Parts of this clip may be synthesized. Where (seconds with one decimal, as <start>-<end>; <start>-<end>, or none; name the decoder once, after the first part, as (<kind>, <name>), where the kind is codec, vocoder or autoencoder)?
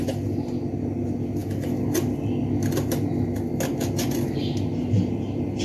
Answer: none